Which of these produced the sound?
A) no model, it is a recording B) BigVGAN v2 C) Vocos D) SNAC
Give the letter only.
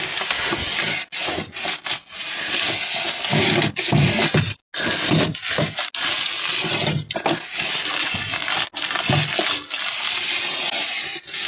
A